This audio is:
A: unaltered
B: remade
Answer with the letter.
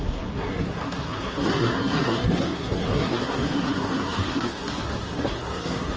B